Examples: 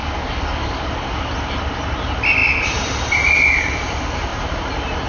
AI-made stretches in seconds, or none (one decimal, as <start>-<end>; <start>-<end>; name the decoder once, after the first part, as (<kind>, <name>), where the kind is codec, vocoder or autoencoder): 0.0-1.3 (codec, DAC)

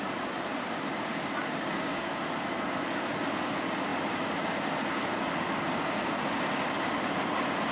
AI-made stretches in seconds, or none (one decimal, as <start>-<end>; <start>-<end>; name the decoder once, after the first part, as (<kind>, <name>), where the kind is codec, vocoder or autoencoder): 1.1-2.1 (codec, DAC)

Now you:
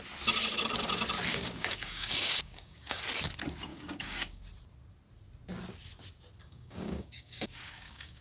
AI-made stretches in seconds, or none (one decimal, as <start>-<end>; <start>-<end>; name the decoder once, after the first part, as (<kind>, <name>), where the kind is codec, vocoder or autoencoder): 1.3-3.0 (codec, DAC); 3.7-4.4; 6.4-8.2

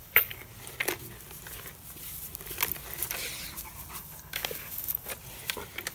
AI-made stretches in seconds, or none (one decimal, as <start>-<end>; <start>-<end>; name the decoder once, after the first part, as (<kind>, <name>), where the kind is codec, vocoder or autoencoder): 0.0-0.5 (codec, DAC); 4.0-5.1